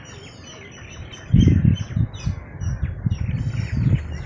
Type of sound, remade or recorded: recorded